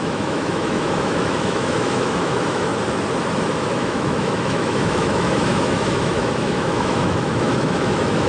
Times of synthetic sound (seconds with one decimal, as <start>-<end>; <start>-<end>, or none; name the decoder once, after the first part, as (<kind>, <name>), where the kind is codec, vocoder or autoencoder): 0.0-2.7 (autoencoder, DAC-VAE); 3.5-8.3